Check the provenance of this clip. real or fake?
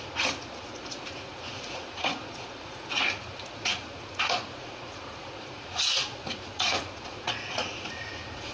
fake